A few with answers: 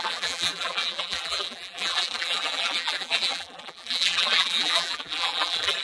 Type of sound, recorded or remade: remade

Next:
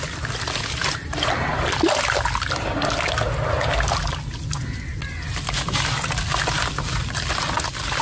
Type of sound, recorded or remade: recorded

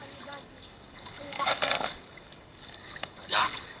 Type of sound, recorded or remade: remade